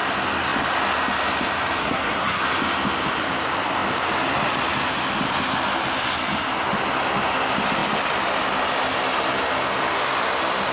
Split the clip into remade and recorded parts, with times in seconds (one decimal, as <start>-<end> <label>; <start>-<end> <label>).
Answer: 0.0-1.8 recorded; 1.8-2.4 remade; 2.4-10.7 recorded